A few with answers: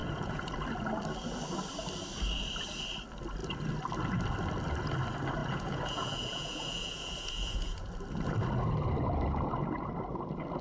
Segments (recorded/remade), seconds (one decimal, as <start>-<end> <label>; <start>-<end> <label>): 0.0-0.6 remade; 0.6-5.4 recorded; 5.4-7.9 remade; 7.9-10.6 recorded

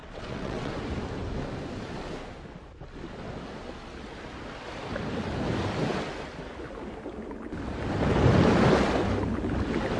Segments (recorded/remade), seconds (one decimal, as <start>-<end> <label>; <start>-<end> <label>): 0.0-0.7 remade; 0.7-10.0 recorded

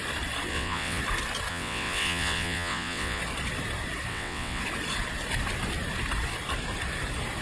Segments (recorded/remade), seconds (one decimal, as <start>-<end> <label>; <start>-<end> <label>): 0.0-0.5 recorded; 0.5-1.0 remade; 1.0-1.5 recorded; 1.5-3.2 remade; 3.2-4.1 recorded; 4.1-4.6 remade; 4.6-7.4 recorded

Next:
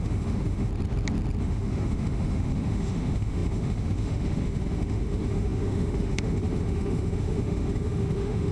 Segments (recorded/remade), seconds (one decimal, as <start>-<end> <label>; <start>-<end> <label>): 0.0-0.7 remade; 0.7-1.4 recorded; 1.4-8.5 remade

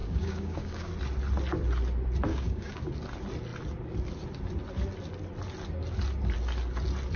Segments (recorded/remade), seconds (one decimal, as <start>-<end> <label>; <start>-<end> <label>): 0.0-0.9 remade; 0.9-2.3 recorded; 2.3-2.9 remade; 2.9-7.2 recorded